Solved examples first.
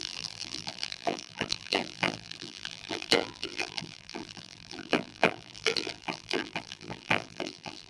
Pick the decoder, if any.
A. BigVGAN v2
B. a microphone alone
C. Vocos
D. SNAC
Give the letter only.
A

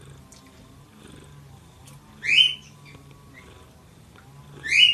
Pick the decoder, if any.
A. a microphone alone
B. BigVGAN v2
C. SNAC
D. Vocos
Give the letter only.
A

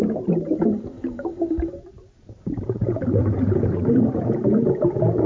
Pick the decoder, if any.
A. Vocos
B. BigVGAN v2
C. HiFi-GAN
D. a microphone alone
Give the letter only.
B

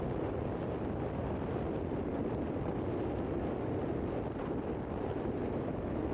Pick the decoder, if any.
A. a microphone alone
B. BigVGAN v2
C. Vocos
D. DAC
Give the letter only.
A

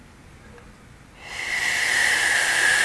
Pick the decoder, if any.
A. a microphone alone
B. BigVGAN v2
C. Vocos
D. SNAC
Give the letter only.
A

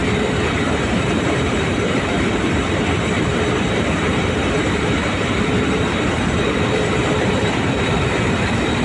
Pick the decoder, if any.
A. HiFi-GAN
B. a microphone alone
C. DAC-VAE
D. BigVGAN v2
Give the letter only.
D